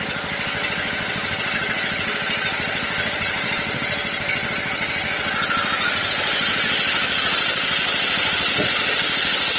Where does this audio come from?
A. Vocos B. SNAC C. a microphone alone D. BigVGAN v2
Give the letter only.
C